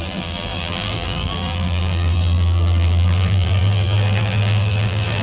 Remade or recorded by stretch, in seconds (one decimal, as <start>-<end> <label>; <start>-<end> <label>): 0.0-5.2 remade